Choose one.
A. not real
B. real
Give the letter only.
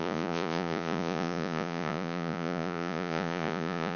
A